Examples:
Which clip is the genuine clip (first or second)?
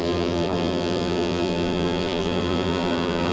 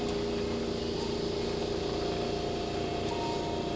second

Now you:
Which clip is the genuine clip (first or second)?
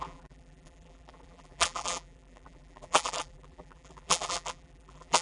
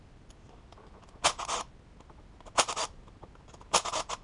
second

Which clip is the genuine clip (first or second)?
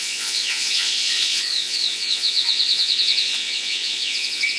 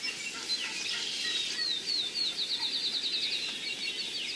second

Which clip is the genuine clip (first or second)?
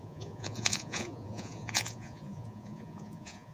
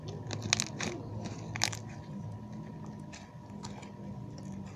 second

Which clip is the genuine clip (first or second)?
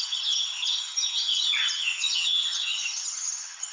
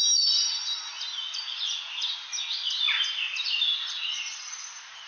second